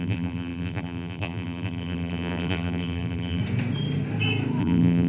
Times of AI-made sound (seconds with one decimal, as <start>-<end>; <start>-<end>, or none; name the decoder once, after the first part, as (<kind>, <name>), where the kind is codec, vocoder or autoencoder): 0.0-3.4 (vocoder, BigVGAN v2); 4.6-5.1